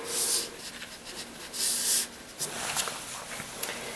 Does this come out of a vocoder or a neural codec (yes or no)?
no